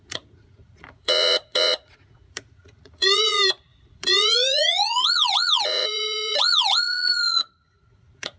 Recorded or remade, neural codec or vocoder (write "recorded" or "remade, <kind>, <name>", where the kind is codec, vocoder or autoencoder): remade, vocoder, Vocos